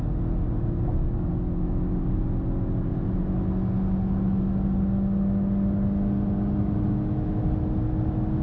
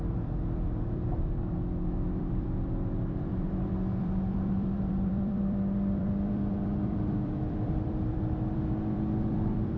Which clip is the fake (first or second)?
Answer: second